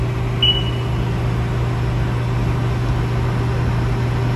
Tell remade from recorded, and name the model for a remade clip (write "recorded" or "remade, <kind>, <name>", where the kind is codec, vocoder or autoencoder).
recorded